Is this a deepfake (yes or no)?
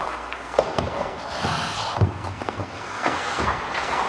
yes